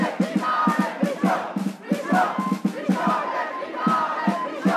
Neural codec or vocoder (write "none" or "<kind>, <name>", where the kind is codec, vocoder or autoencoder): none